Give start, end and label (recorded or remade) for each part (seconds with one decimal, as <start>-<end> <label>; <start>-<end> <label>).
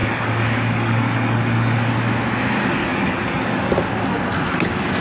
0.0-1.9 remade; 1.9-2.9 recorded; 2.9-3.7 remade; 3.7-5.0 recorded